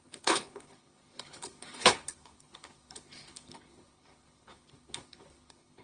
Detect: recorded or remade remade